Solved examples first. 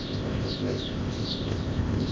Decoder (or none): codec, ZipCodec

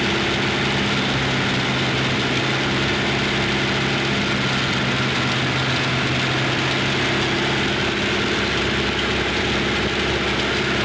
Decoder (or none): none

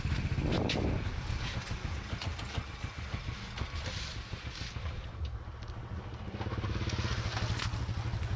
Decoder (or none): none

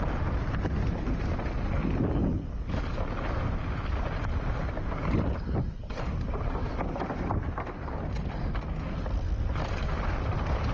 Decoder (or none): none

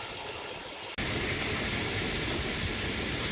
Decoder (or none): none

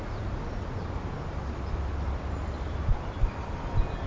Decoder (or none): none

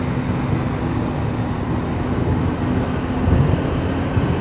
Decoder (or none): none